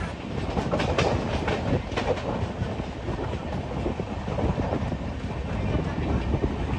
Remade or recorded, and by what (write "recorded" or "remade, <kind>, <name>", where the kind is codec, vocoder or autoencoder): recorded